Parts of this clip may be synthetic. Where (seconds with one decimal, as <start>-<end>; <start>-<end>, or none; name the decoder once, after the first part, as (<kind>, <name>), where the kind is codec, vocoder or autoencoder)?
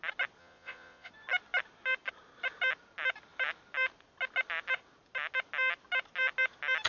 0.4-1.1 (vocoder, Vocos)